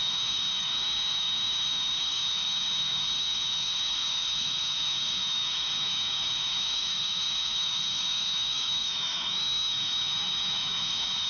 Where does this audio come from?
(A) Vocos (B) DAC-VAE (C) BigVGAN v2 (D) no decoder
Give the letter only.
B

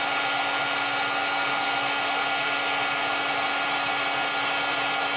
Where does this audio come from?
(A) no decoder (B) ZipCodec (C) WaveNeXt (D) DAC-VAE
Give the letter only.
A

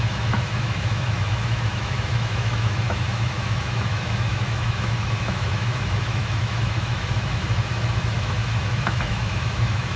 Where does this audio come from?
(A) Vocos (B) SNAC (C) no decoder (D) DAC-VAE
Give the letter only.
D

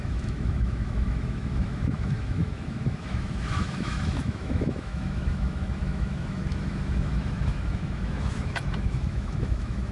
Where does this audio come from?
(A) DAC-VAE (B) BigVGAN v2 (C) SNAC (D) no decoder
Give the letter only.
A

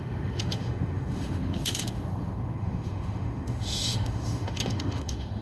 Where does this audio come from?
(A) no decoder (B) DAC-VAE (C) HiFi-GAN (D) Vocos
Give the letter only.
B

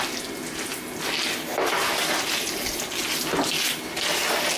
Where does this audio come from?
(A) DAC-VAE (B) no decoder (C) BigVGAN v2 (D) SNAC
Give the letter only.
B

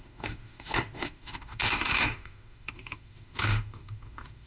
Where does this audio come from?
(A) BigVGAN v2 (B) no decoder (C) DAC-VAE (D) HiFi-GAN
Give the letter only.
C